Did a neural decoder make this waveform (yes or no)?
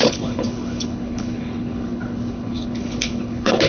yes